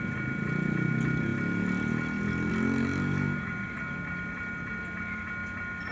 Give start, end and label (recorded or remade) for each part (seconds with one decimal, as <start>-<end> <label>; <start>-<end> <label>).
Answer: 0.0-5.9 recorded